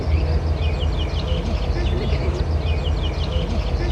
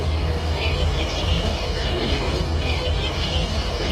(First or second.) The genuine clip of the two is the first